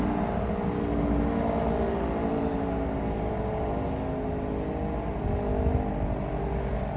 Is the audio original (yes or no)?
yes